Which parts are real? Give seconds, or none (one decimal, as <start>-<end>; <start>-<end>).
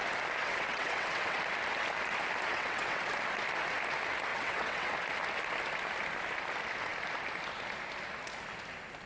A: 0.0-0.4; 1.4-2.5; 3.1-4.3; 4.9-9.1